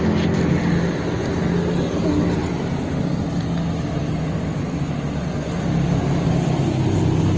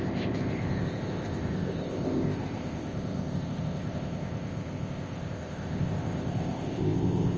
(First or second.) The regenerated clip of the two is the second